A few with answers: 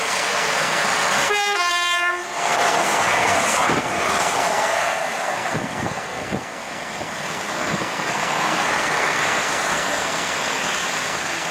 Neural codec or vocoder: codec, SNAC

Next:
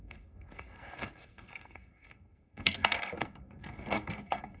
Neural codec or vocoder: codec, SNAC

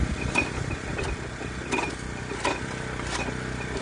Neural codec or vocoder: none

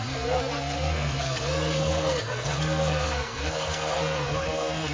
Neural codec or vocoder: codec, SNAC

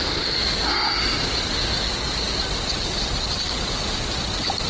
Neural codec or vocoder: none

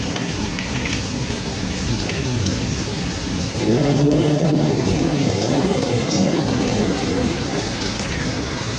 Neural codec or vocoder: codec, SNAC